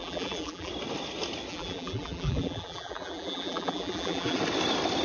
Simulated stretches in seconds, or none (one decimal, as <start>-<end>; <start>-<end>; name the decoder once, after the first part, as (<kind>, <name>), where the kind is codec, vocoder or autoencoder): 0.0-0.7 (vocoder, BigVGAN v2); 1.5-4.4